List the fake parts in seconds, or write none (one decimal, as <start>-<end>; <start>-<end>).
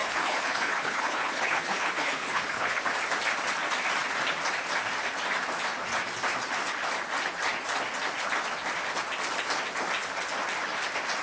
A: 0.0-2.8